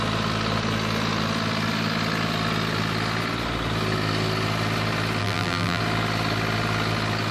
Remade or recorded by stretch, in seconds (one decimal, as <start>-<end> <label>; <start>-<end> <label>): 0.0-5.2 recorded; 5.2-5.8 remade; 5.8-7.3 recorded